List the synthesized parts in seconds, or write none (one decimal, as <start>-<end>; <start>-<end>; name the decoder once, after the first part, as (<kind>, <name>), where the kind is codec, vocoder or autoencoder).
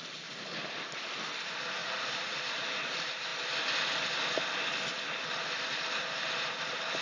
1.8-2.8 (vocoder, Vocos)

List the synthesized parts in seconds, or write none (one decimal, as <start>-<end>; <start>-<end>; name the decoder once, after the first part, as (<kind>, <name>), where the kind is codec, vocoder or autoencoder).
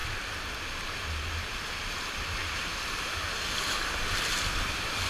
none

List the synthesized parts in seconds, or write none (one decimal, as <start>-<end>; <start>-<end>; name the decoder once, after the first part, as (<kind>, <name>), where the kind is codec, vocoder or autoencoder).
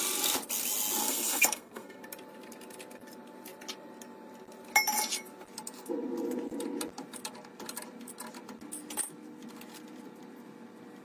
1.0-2.0 (codec, SNAC)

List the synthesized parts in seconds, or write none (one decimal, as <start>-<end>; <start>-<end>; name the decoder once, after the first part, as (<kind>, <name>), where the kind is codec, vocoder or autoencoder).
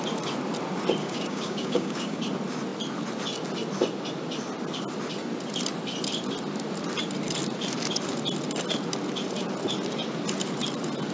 1.0-2.2 (codec, DAC)